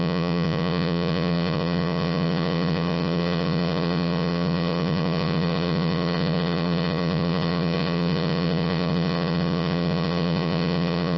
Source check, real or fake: fake